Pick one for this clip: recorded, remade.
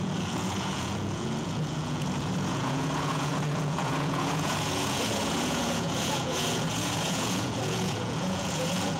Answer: remade